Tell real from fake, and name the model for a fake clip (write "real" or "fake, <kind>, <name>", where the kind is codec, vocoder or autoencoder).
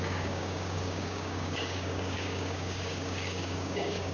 fake, codec, DAC